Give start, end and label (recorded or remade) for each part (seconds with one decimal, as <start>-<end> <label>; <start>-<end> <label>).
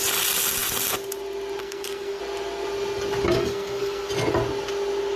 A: 0.0-1.6 recorded; 1.6-2.2 remade; 2.2-3.4 recorded; 3.4-4.1 remade; 4.1-5.2 recorded